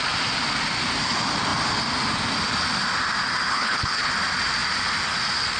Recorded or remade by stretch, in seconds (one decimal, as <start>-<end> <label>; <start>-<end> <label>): 0.0-3.5 recorded; 3.5-4.1 remade; 4.1-5.6 recorded